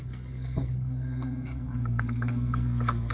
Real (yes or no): no